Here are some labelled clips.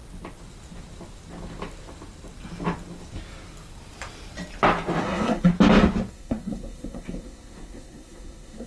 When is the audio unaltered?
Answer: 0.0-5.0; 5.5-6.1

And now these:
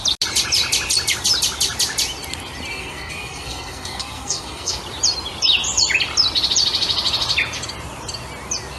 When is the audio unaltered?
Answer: 0.0-2.7; 4.8-8.8

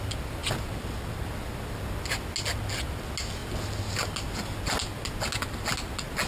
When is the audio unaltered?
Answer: 0.0-6.3

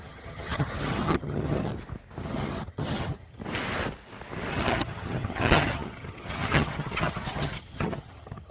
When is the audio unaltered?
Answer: 1.7-2.2; 3.4-4.5